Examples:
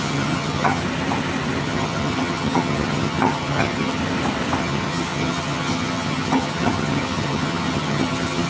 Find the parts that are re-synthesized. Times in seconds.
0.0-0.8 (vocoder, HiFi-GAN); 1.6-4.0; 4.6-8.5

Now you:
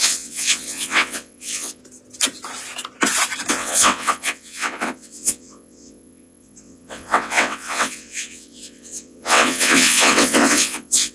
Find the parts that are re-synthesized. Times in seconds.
0.0-1.8 (vocoder, WaveNeXt); 3.5-11.1

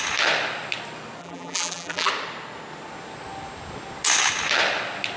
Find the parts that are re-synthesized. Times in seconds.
1.2-2.1 (vocoder, BigVGAN v2)

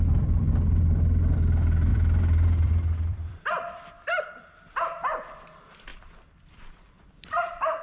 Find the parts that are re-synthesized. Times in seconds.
1.9-2.7 (vocoder, BigVGAN v2); 3.1-3.8; 5.9-7.8

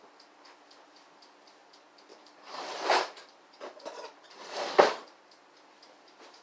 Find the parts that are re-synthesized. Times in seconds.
2.1-5.2 (vocoder, BigVGAN v2)